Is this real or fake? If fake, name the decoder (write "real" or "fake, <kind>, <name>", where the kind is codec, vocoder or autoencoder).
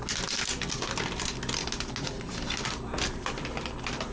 real